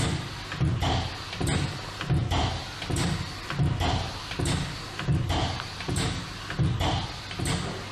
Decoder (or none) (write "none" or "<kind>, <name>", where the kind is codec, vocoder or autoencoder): none